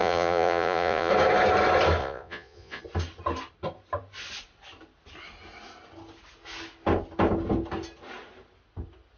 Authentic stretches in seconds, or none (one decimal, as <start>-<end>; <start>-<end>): 1.1-2.0; 2.8-9.2